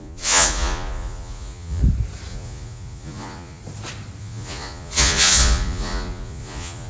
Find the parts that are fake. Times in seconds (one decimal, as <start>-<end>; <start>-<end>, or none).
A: 0.0-1.8; 2.3-3.6; 4.2-6.9

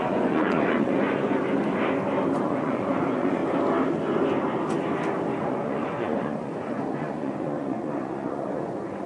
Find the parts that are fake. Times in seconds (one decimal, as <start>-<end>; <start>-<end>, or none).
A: 0.0-1.3; 2.4-3.4; 5.4-9.1

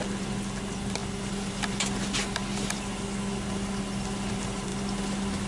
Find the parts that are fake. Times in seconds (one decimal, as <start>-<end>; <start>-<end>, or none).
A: none